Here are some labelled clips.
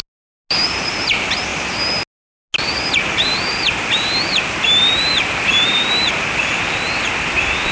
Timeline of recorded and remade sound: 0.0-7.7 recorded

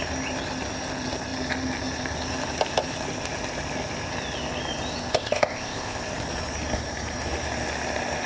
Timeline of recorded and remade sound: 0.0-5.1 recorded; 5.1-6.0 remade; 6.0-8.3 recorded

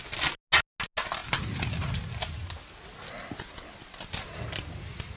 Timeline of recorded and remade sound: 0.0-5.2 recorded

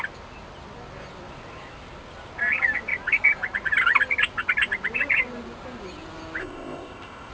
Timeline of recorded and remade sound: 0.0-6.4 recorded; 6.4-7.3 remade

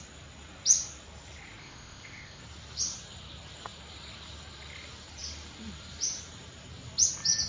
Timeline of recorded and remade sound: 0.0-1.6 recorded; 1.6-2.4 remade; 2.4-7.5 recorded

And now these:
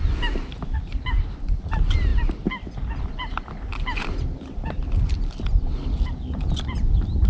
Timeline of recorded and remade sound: 0.0-7.3 recorded

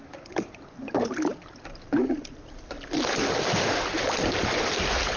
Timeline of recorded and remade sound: 0.0-5.2 recorded